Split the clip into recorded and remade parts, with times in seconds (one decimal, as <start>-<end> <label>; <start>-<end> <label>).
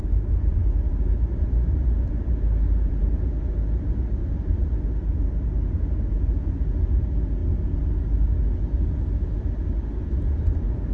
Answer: 0.0-4.2 remade; 4.2-6.9 recorded; 6.9-7.4 remade; 7.4-10.0 recorded; 10.0-10.9 remade